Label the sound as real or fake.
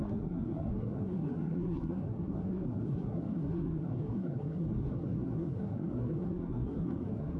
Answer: fake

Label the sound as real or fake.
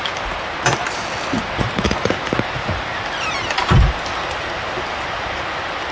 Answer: real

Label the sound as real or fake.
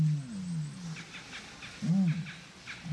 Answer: real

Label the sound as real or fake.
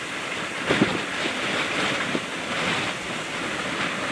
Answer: real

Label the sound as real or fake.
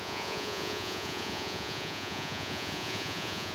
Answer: fake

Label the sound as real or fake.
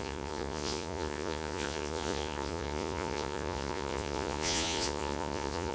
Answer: fake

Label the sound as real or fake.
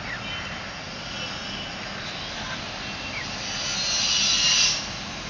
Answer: real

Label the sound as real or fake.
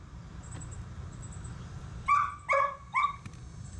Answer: fake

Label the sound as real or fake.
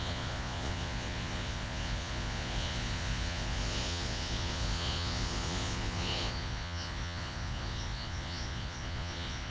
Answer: fake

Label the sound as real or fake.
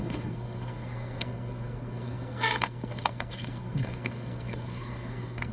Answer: fake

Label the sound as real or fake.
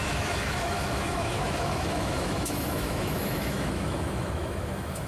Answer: fake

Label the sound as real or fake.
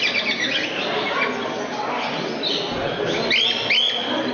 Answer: real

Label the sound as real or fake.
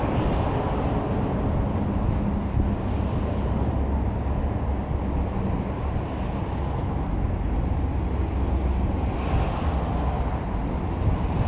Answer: real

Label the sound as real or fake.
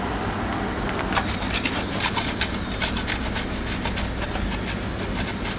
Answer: real